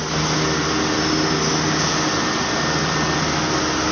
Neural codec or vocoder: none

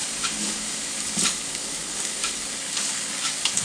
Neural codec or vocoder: codec, DAC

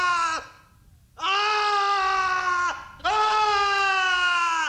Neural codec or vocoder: none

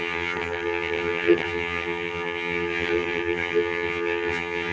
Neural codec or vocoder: vocoder, HiFi-GAN